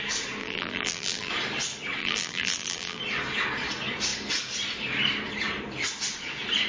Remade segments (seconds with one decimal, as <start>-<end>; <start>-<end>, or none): 0.4-1.3; 2.0-3.0